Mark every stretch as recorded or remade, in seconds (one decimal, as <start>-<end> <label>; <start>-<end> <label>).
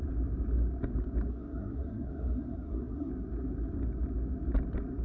0.0-1.3 recorded; 1.3-3.1 remade; 3.1-5.0 recorded